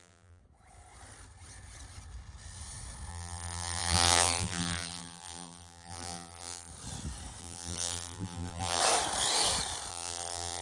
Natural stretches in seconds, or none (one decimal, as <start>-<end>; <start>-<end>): 0.4-3.1; 6.7-7.4; 8.8-9.9